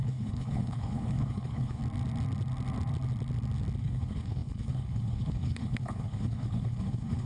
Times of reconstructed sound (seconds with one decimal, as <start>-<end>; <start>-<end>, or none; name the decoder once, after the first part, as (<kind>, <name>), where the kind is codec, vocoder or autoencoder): 0.0-1.8 (codec, HILCodec); 3.8-7.3